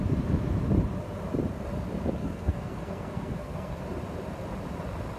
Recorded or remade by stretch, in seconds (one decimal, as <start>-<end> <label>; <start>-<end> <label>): 0.0-2.2 recorded; 2.2-3.8 remade; 3.8-5.2 recorded